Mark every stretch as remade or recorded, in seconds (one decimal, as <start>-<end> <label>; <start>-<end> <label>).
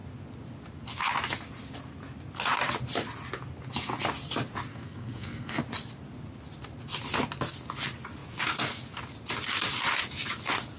0.0-4.7 recorded; 4.7-5.6 remade; 5.6-10.8 recorded